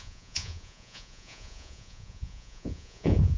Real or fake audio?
fake